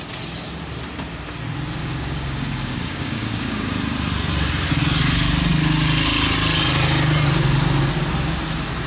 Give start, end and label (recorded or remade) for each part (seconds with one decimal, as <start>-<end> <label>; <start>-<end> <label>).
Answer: 0.0-1.8 recorded; 1.8-3.7 remade; 3.7-8.9 recorded